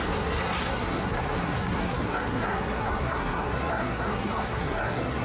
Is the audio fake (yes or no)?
yes